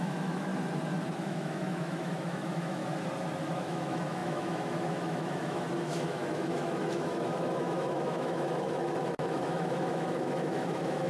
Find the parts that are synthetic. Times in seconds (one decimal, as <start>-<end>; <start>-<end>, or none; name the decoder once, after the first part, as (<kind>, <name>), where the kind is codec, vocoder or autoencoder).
0.0-0.5 (autoencoder, DAC-VAE); 1.2-2.8; 3.5-11.1

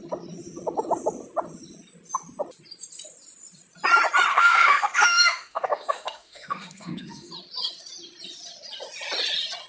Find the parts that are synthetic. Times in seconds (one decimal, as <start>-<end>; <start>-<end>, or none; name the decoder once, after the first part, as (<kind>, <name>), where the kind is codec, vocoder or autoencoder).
4.3-7.3 (autoencoder, DAC-VAE)

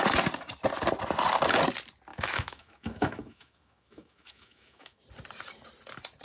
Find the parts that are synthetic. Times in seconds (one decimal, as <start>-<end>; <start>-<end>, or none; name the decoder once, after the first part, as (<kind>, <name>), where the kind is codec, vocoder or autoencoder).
2.1-5.0 (autoencoder, DAC-VAE)

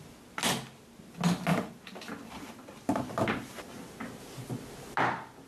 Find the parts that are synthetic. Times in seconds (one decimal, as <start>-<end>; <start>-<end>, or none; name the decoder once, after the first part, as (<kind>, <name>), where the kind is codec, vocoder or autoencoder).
none

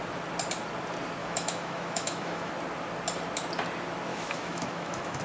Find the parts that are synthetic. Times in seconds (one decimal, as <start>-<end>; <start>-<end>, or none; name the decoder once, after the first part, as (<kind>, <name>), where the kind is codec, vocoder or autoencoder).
1.2-2.5 (autoencoder, DAC-VAE); 4.1-5.2

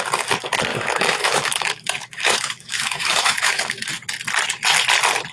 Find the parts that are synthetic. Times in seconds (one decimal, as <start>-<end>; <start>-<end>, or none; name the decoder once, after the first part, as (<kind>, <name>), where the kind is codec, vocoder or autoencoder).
0.7-3.9 (autoencoder, DAC-VAE)

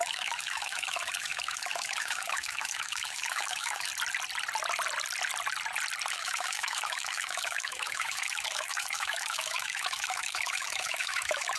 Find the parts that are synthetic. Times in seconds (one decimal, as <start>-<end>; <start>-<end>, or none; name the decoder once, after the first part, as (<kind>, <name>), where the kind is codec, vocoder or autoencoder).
0.0-3.9 (autoencoder, DAC-VAE); 6.1-11.6